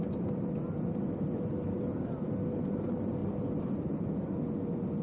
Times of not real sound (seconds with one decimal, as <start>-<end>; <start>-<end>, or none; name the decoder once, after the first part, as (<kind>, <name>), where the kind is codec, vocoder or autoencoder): none